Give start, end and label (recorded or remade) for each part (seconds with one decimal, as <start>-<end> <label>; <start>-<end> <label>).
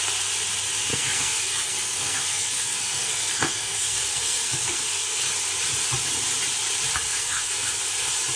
0.0-0.9 recorded; 0.9-5.3 remade; 5.3-7.1 recorded; 7.1-7.8 remade; 7.8-8.4 recorded